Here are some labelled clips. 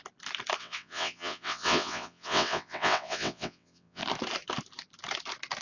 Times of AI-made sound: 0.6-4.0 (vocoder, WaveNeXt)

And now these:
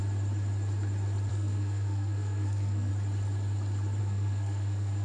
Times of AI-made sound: 1.3-2.9 (codec, SNAC); 4.0-5.0

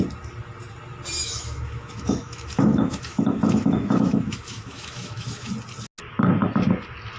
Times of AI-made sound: 1.2-5.5 (autoencoder, DAC-VAE)

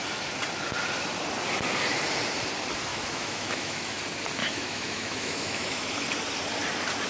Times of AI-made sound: 2.9-4.0 (autoencoder, DAC-VAE); 4.4-5.9

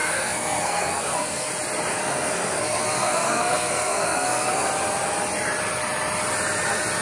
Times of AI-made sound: 0.0-1.5 (codec, SNAC); 1.9-4.7

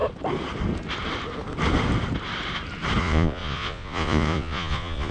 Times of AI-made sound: 3.0-5.1 (vocoder, Vocos)

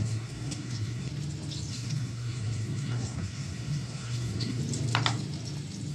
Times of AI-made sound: 0.0-1.1 (codec, SNAC); 1.7-4.6

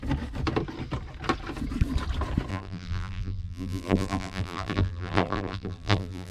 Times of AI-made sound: 2.5-6.3 (vocoder, BigVGAN v2)